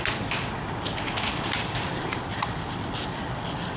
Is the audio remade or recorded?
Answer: recorded